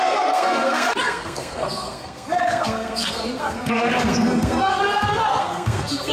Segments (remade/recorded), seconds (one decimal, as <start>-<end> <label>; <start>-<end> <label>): 0.0-6.1 remade

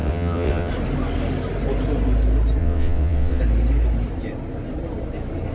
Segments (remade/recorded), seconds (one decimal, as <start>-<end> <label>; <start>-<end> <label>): 0.0-0.7 remade; 0.7-2.6 recorded; 2.6-3.4 remade; 3.4-5.5 recorded

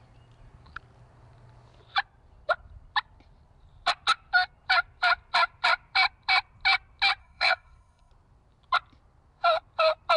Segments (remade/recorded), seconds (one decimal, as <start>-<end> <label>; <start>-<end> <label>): 0.0-7.2 recorded; 7.2-8.1 remade; 8.1-10.2 recorded

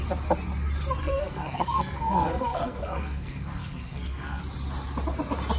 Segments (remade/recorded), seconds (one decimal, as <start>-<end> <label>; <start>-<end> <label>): 0.0-1.0 recorded; 1.0-4.4 remade; 4.4-5.6 recorded

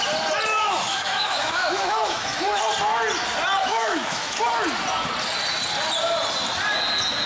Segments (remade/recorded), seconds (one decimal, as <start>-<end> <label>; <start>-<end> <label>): 0.0-0.5 recorded; 0.5-2.6 remade; 2.6-3.6 recorded; 3.6-4.4 remade; 4.4-7.3 recorded

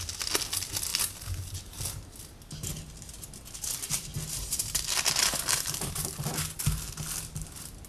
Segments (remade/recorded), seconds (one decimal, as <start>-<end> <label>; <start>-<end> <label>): 0.0-3.9 recorded; 3.9-4.6 remade; 4.6-7.9 recorded